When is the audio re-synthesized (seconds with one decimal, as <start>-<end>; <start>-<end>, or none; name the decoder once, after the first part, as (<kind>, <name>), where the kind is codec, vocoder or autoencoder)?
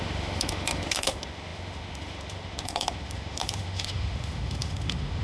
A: 0.0-5.2 (autoencoder, DAC-VAE)